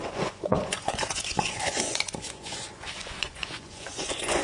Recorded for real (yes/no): no